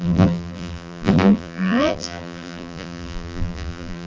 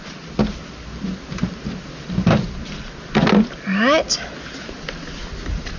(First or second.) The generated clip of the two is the first